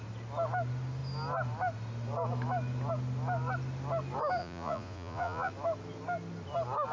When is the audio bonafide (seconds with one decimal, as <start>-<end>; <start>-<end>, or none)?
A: 0.0-4.4; 5.5-6.9